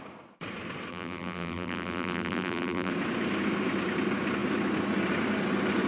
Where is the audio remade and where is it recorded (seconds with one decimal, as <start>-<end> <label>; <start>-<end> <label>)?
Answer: 0.0-0.9 recorded; 0.9-2.9 remade; 2.9-5.9 recorded